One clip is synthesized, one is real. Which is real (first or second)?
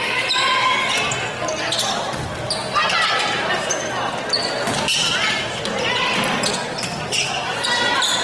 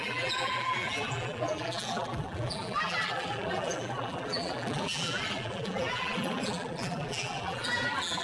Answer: first